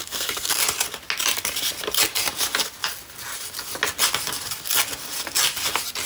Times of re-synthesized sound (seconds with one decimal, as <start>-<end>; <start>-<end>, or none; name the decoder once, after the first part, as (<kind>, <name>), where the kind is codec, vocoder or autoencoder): 0.0-0.6 (codec, SNAC)